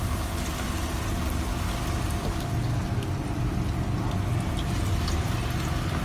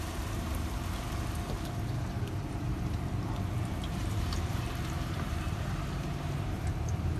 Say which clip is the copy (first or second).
second